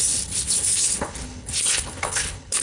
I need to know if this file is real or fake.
fake